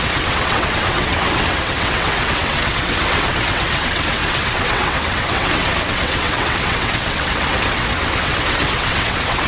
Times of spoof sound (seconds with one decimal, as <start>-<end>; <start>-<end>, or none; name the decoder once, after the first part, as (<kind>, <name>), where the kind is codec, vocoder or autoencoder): 0.0-9.5 (vocoder, WaveNeXt)